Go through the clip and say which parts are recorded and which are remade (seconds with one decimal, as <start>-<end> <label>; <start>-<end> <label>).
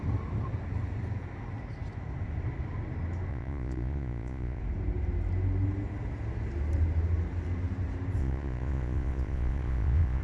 0.0-3.3 recorded; 3.3-4.6 remade; 4.6-8.2 recorded; 8.2-10.2 remade